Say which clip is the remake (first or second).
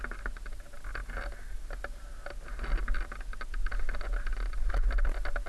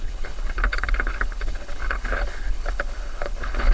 second